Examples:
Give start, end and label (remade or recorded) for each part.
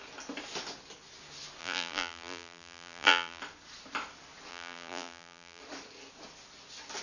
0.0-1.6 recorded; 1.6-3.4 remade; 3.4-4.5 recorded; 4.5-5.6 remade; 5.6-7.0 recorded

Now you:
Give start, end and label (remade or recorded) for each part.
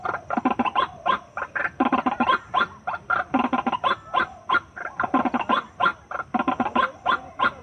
0.0-1.6 recorded; 1.6-5.1 remade; 5.1-7.6 recorded